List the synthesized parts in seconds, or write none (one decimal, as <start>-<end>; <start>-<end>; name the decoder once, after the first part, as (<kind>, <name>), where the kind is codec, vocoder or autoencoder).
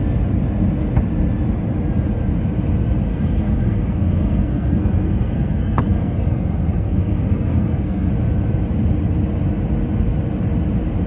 3.1-8.1 (codec, SNAC)